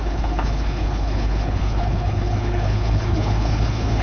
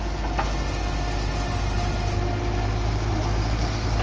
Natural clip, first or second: second